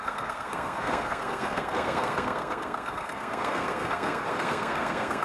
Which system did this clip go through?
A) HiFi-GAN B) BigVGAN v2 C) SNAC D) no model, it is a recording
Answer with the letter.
C